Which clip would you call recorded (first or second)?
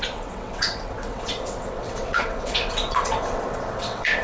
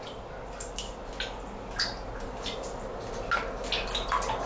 second